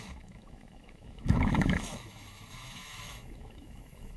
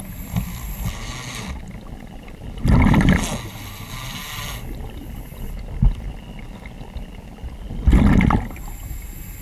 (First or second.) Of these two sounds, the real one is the second